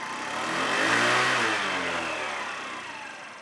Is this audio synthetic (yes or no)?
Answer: no